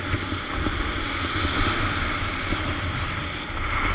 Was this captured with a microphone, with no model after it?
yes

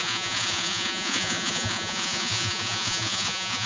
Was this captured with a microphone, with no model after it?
no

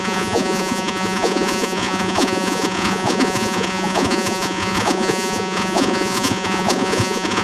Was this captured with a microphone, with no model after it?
no